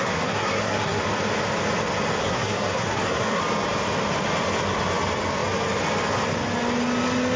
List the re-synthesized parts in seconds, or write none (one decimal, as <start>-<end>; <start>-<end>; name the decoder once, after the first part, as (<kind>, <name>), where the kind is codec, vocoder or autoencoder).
0.0-1.0 (codec, SNAC); 2.2-3.4